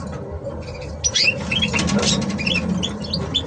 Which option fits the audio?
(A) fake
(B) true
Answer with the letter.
B